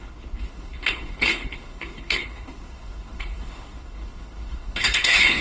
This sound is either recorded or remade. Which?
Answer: remade